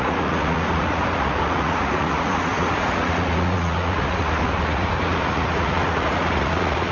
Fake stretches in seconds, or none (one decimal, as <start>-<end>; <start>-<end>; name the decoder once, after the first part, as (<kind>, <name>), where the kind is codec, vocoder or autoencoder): 0.0-6.9 (vocoder, Vocos)